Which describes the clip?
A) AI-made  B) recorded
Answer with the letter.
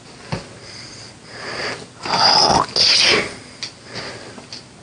B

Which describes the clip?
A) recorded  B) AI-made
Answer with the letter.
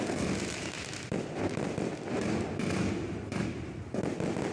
A